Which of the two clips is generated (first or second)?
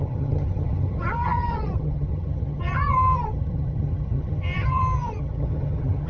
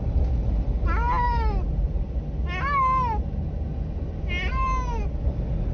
first